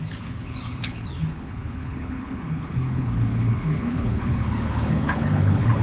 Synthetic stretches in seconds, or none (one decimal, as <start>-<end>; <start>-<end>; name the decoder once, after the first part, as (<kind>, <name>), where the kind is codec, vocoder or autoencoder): 0.0-5.8 (codec, HILCodec)